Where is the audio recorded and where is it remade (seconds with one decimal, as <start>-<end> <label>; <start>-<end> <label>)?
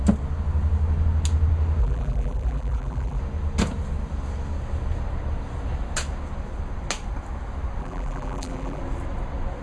0.0-1.8 recorded; 1.8-3.2 remade; 3.2-7.8 recorded; 7.8-8.8 remade; 8.8-9.6 recorded